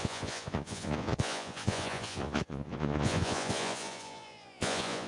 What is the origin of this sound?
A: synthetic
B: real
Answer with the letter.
A